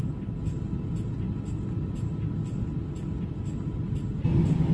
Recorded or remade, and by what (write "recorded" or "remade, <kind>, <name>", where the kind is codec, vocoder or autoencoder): recorded